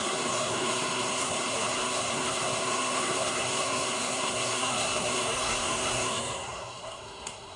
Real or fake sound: fake